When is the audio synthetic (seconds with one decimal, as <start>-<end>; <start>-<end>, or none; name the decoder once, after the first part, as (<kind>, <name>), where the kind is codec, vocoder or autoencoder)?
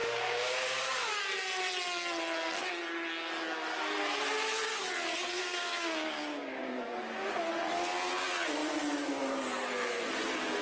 0.0-1.2 (codec, DAC); 5.4-7.0